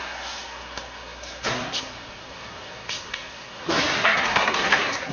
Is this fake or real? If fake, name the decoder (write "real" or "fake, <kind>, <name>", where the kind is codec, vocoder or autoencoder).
fake, codec, SNAC